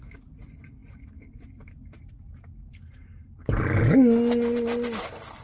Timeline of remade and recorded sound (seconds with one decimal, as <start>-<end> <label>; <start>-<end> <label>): 0.0-5.4 recorded